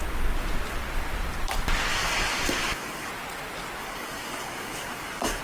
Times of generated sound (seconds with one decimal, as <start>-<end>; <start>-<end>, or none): 1.9-3.1; 3.8-5.4